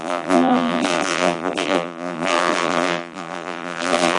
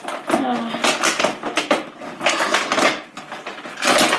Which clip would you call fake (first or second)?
first